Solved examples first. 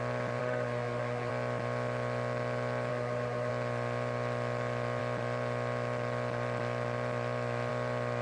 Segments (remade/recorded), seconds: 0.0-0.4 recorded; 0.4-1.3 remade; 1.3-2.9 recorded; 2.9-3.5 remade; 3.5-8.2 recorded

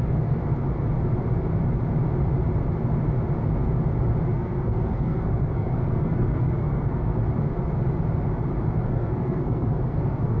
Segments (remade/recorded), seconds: 0.0-0.4 remade; 0.4-4.3 recorded; 4.3-7.2 remade; 7.2-8.8 recorded; 8.8-10.4 remade

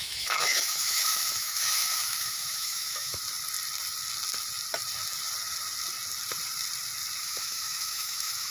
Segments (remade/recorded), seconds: 0.0-3.2 remade; 3.2-7.2 recorded; 7.2-8.5 remade

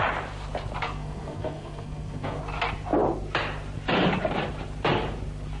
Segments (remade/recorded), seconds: 0.0-0.8 recorded; 0.8-2.4 remade; 2.4-5.6 recorded

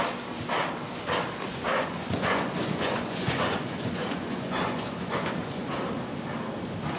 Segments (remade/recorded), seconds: 0.0-1.5 recorded; 1.5-5.7 remade; 5.7-7.0 recorded

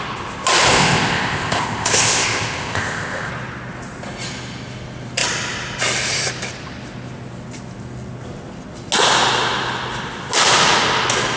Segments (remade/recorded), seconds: 0.0-0.7 recorded; 0.7-3.3 remade; 3.3-11.4 recorded

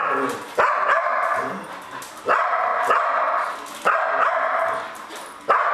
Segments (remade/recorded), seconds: 0.0-2.7 remade; 2.7-4.3 recorded; 4.3-5.7 remade

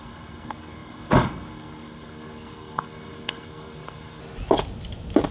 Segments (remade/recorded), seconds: 0.0-4.2 remade; 4.2-5.3 recorded